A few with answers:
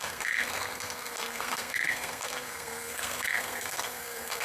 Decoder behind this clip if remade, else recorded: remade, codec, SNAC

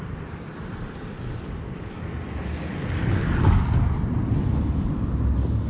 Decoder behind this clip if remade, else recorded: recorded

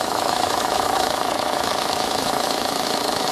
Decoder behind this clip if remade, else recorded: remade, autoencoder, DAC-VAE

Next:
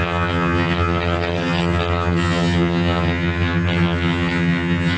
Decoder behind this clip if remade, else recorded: remade, vocoder, HiFi-GAN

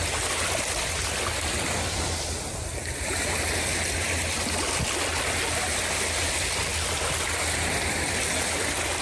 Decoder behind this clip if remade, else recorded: recorded